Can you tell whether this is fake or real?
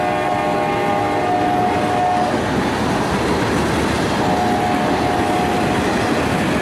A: real